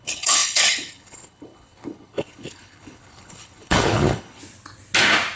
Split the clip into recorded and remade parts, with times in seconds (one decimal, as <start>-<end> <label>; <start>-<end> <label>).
0.0-4.4 remade; 4.4-5.4 recorded